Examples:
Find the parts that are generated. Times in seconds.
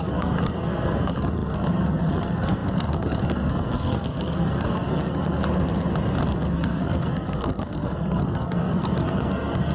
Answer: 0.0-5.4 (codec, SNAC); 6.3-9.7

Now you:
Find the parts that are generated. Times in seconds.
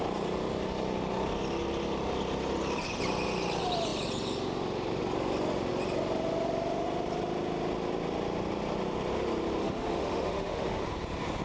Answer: 9.6-10.8 (autoencoder, DAC-VAE)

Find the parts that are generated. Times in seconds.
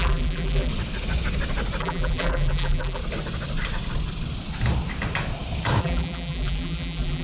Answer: 0.0-0.7 (vocoder, BigVGAN v2); 1.8-3.0; 5.8-7.2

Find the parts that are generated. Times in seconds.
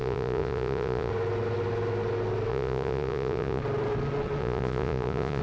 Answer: 0.0-1.1 (vocoder, Vocos); 2.5-3.6; 4.4-5.4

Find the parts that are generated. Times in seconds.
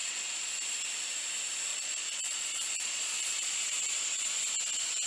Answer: 0.0-0.5 (vocoder, Vocos); 1.7-4.5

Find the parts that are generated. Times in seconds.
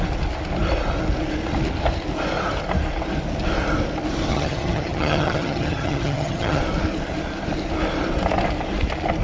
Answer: 4.3-6.6 (vocoder, HiFi-GAN)